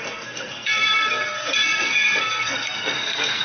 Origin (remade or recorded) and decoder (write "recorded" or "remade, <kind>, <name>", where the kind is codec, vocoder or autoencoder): remade, codec, SNAC